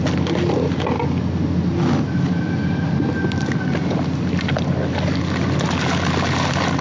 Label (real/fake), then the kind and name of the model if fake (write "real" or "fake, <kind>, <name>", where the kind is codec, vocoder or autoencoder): real